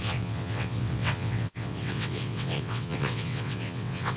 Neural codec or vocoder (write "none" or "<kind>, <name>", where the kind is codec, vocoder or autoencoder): vocoder, WaveNeXt